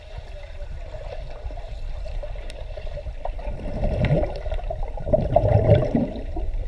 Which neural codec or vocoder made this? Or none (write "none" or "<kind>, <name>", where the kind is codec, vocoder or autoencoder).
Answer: vocoder, BigVGAN v2